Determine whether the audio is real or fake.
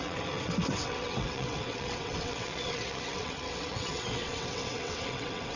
fake